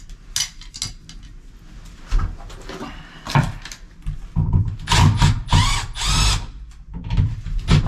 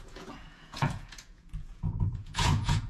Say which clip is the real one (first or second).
first